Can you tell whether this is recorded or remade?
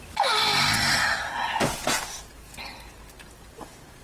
recorded